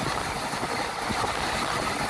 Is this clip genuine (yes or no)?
yes